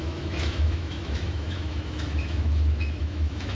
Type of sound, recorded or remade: remade